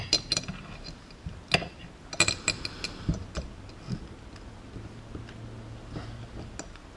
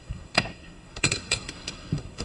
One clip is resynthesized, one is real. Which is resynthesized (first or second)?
second